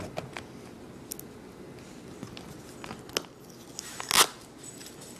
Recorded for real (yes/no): yes